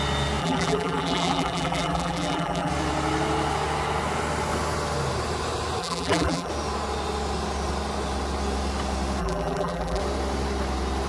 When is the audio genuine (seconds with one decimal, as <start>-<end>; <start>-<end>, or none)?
0.0-0.4; 2.7-5.8; 6.5-9.2; 10.0-11.1